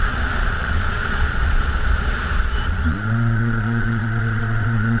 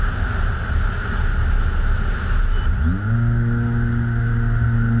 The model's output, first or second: first